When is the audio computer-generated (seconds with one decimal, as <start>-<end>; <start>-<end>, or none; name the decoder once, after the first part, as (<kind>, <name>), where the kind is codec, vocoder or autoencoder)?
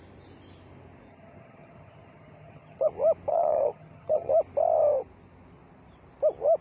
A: 1.1-2.9 (vocoder, HiFi-GAN); 3.3-4.3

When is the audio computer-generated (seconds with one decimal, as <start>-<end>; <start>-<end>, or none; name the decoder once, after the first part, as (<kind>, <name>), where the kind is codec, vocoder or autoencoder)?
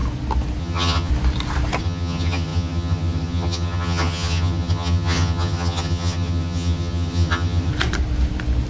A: 0.6-1.1 (vocoder, HiFi-GAN); 1.8-7.7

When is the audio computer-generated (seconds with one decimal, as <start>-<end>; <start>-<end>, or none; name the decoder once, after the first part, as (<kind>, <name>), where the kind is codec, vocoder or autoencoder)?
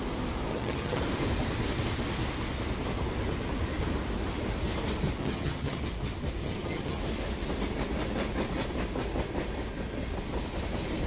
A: 0.5-1.0 (vocoder, HiFi-GAN); 5.2-5.8; 6.4-7.0